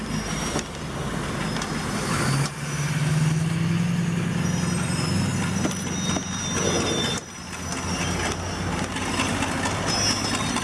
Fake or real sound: real